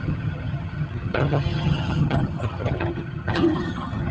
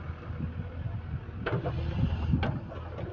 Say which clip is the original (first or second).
second